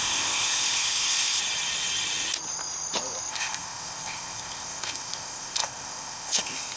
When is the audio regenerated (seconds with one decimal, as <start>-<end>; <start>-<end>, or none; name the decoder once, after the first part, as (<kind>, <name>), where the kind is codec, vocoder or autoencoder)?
0.0-1.4 (codec, ZipCodec); 3.3-6.8

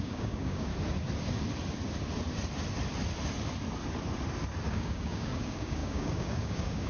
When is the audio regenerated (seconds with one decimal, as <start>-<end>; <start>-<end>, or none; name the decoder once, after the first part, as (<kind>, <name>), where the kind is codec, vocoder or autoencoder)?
0.0-0.7 (codec, DAC); 4.7-6.9

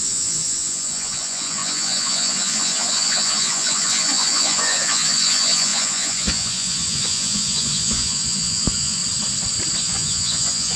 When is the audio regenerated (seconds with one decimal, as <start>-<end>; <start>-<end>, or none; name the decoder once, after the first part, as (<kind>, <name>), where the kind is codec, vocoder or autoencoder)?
0.0-9.0 (vocoder, Vocos); 9.8-10.8

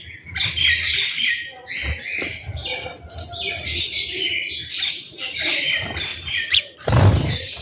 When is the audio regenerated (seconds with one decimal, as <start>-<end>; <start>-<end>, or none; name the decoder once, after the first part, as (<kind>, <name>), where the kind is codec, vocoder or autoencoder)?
0.9-1.6 (vocoder, BigVGAN v2); 2.6-4.3; 6.1-7.1

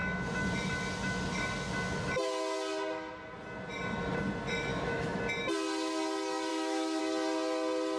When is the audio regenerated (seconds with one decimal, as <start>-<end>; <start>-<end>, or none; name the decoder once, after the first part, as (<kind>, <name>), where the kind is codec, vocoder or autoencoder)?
4.7-5.2 (autoencoder, DAC-VAE); 6.5-7.0